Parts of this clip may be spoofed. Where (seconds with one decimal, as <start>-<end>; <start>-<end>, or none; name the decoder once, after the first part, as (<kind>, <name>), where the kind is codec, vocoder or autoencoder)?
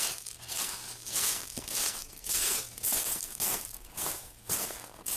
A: 0.0-5.2 (codec, SNAC)